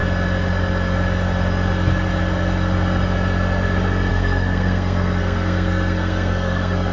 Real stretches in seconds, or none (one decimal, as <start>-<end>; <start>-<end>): 0.0-4.1